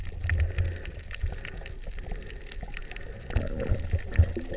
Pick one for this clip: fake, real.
real